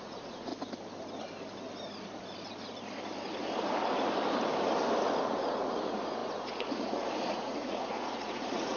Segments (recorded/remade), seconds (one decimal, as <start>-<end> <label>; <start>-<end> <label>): 0.0-0.5 remade; 0.5-5.2 recorded; 5.2-8.8 remade

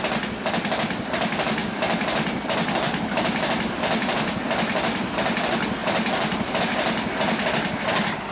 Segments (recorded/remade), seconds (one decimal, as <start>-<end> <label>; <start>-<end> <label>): 0.0-8.3 recorded